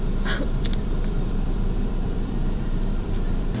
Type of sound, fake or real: fake